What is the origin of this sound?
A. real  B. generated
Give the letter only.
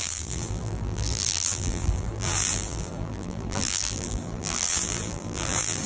B